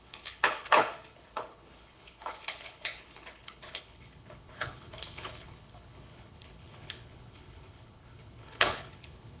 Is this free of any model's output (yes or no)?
no